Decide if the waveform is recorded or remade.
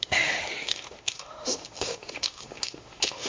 remade